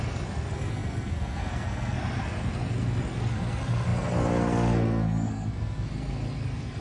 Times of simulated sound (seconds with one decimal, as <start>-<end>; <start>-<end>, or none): 0.0-6.8